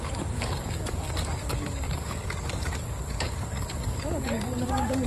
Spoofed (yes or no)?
yes